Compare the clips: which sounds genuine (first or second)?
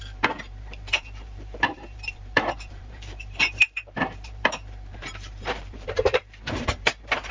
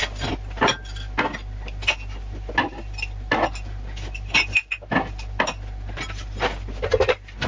second